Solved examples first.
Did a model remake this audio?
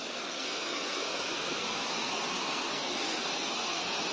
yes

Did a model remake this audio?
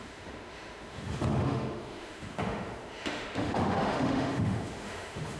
yes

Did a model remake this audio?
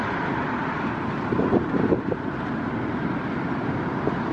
no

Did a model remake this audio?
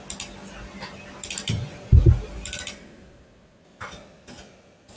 no